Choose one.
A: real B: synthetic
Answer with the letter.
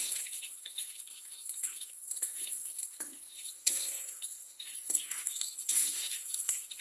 B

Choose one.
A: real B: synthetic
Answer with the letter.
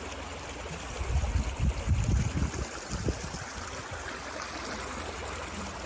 A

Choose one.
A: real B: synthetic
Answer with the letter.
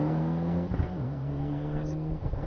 B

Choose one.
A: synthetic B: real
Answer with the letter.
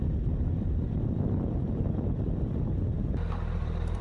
B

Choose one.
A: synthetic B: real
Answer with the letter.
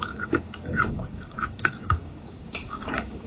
A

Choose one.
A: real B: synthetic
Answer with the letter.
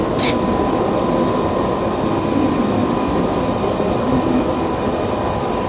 A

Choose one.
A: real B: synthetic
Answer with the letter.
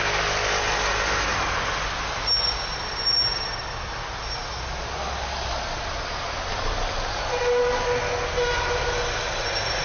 A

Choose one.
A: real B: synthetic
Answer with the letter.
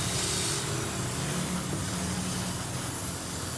A